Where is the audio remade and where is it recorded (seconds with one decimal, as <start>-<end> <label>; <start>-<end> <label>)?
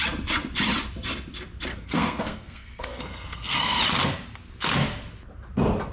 0.0-1.7 recorded; 1.7-3.8 remade; 3.8-5.9 recorded